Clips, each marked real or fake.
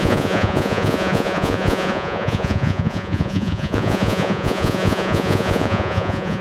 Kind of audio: fake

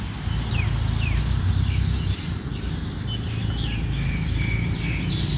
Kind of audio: real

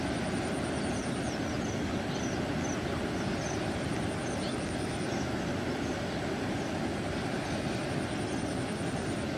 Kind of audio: real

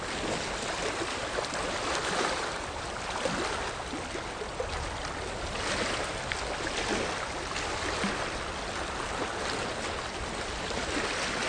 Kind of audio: real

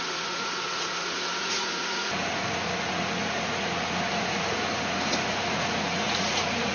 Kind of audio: fake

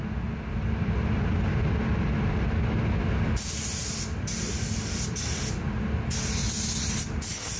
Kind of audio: real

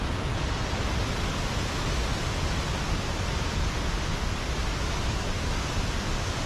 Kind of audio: real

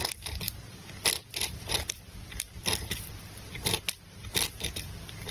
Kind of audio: fake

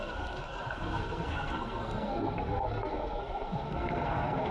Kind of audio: fake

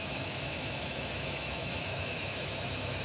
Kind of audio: fake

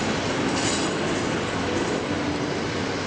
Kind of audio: real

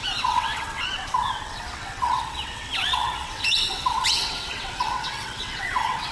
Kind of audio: fake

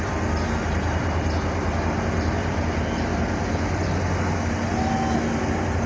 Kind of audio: real